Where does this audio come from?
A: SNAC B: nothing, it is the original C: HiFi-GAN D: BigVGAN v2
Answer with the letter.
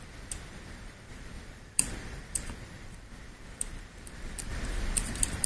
D